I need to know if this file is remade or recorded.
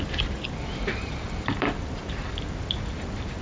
remade